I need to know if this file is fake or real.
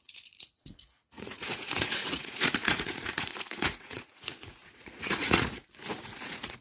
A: fake